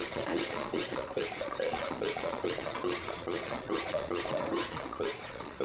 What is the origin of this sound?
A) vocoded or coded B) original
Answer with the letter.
A